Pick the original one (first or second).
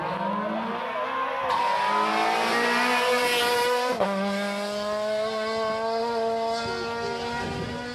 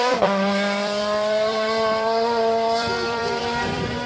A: first